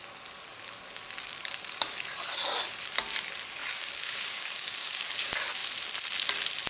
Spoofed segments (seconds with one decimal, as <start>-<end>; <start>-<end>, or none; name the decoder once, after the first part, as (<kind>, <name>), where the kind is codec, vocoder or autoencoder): 3.6-5.1 (codec, DAC)